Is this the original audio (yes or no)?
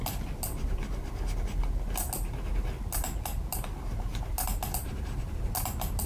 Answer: yes